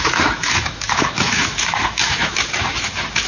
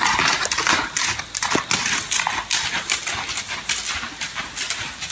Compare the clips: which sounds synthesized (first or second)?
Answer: first